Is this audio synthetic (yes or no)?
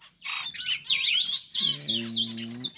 no